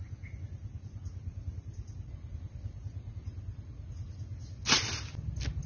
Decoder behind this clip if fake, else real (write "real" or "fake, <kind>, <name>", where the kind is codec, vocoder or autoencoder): real